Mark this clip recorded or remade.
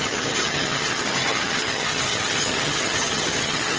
remade